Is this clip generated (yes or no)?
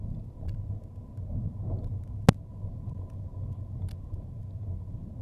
no